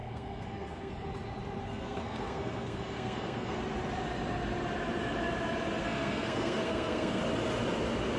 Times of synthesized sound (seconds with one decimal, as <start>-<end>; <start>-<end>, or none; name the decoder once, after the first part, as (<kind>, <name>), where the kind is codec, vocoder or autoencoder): 0.0-0.9 (codec, SNAC); 1.6-3.6; 5.8-7.2